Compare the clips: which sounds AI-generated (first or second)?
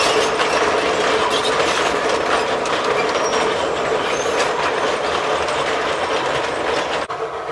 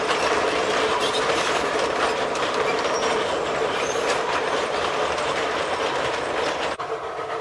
second